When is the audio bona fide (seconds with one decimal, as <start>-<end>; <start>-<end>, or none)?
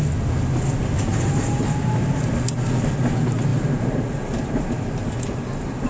0.0-1.1; 2.3-3.5; 4.7-5.9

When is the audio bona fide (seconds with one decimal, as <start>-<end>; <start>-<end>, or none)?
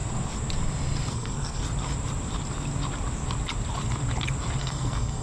0.0-1.1; 1.6-4.6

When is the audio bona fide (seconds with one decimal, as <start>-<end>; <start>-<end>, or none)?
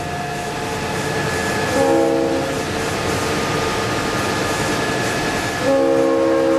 0.0-6.6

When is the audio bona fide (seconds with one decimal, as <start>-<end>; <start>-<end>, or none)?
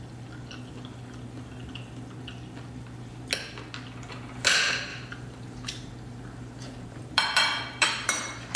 0.0-4.9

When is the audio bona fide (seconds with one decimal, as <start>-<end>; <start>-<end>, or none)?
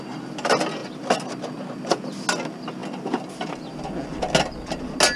0.0-5.2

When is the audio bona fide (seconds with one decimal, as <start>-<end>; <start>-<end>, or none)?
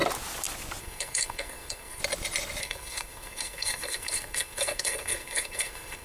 0.0-0.8; 2.0-2.6